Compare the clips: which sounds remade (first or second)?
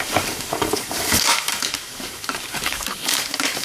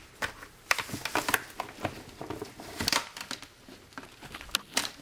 first